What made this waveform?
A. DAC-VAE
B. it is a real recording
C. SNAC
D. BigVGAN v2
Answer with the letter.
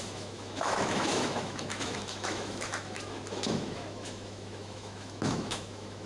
A